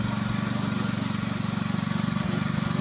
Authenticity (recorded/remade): recorded